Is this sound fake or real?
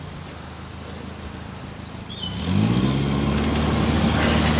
real